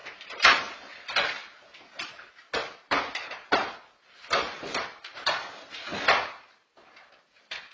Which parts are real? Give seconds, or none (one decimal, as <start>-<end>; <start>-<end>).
0.6-7.7